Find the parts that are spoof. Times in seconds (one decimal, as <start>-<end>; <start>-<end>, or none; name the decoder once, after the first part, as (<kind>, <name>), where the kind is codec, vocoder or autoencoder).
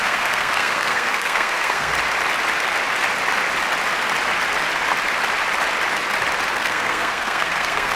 0.0-1.9 (codec, SNAC); 6.5-8.0